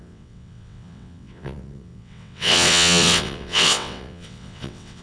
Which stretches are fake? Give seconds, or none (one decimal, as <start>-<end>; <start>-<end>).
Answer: 0.0-5.0

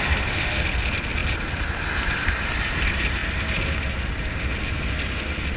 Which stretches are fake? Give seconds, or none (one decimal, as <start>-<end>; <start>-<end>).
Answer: none

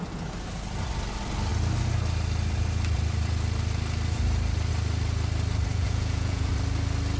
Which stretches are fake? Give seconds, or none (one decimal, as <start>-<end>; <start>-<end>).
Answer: 5.7-6.5

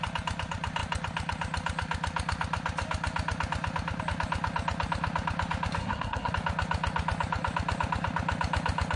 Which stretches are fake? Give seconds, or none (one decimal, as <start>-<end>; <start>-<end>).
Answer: 5.8-6.3